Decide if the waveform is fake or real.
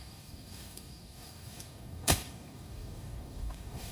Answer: fake